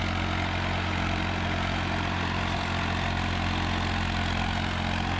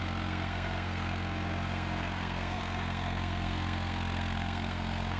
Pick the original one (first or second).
first